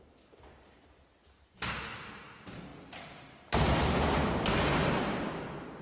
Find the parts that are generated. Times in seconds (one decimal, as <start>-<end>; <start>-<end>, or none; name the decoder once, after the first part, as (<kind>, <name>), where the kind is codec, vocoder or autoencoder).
none